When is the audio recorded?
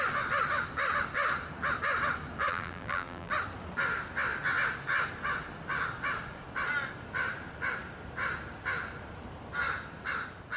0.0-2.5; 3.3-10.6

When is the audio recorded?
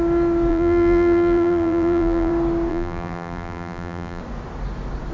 0.0-0.5; 2.3-2.7; 4.2-5.1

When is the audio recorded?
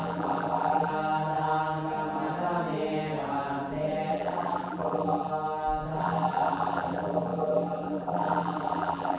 0.9-4.1; 5.3-6.0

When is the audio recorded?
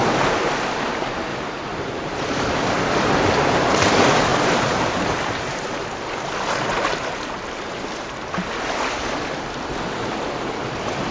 0.0-1.3; 2.3-4.3; 5.8-11.1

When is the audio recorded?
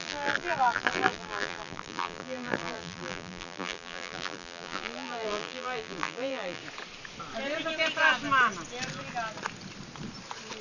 6.6-10.6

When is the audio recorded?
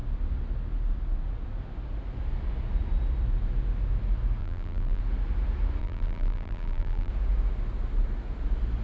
0.0-4.4; 5.0-5.8; 7.1-8.8